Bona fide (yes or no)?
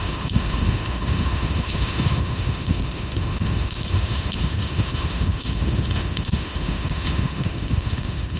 no